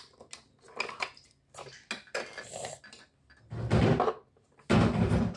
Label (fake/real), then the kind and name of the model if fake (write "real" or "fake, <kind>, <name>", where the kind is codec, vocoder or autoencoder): real